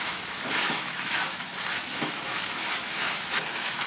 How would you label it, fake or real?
fake